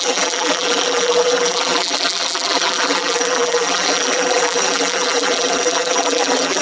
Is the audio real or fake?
fake